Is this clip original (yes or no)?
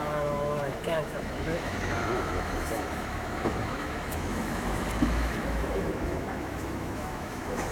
no